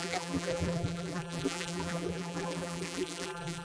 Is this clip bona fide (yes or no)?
no